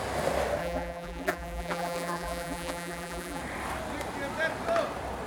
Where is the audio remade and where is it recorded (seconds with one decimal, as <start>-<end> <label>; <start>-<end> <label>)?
0.0-0.6 recorded; 0.6-3.4 remade; 3.4-5.3 recorded